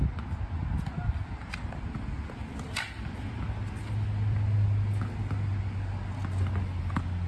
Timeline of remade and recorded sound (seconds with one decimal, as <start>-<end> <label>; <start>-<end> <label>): 0.0-7.3 recorded